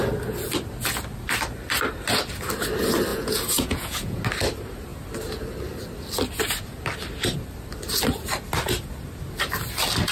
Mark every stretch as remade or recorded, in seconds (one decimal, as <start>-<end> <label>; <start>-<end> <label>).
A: 0.0-3.1 recorded; 3.1-4.2 remade; 4.2-10.1 recorded